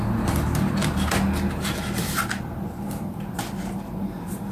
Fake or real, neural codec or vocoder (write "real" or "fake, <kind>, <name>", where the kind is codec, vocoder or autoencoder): real